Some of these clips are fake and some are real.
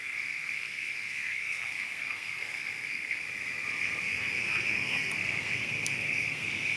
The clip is fake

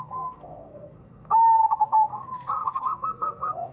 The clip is fake